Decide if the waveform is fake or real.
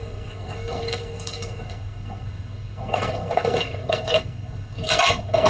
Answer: fake